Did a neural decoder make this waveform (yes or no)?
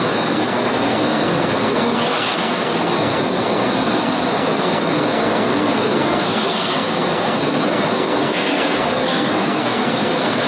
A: yes